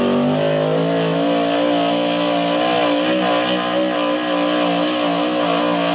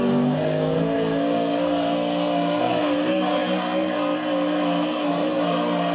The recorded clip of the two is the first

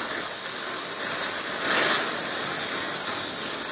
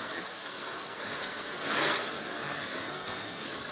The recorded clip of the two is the first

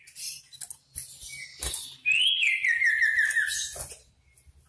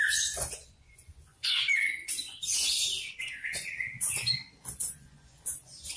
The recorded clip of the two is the first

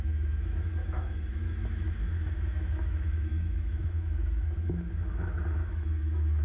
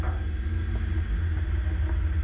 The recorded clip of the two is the second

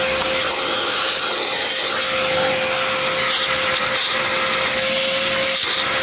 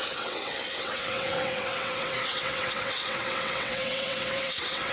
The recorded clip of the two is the first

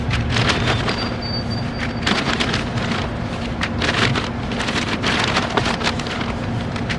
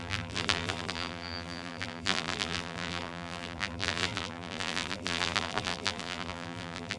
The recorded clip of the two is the first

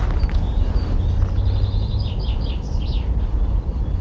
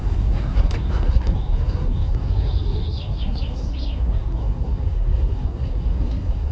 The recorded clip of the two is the first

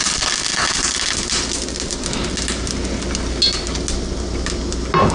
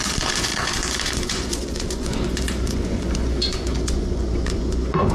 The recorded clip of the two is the first